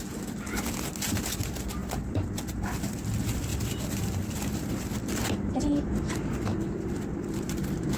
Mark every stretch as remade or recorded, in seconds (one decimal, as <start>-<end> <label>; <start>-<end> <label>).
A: 0.0-3.5 recorded; 3.5-8.0 remade